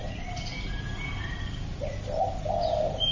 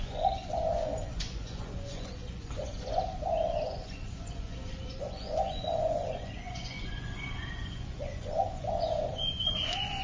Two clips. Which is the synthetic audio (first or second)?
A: second